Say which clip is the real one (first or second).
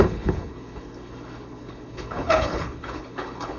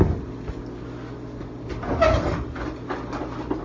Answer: second